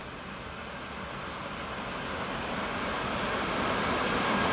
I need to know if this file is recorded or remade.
recorded